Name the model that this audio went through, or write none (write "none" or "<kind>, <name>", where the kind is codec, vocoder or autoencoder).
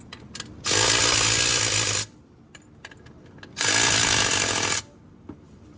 none